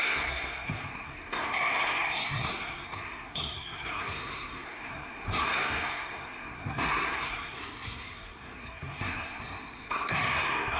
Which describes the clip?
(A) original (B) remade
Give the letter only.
B